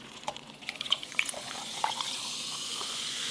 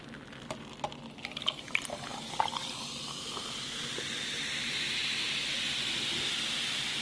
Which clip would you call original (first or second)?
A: second